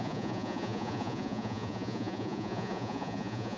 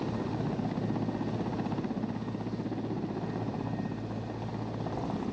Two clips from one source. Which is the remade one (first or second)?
first